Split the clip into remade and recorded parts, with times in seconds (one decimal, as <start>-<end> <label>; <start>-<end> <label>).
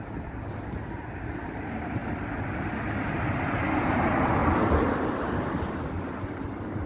0.0-2.0 remade; 2.0-3.6 recorded; 3.6-4.4 remade; 4.4-6.9 recorded